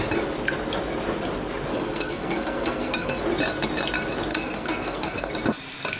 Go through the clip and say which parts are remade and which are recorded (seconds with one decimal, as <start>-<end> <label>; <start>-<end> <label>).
0.0-1.7 recorded; 1.7-3.2 remade; 3.2-4.3 recorded; 4.3-5.3 remade; 5.3-6.0 recorded